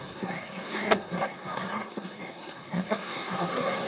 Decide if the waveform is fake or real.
fake